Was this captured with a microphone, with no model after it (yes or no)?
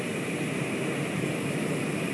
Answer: yes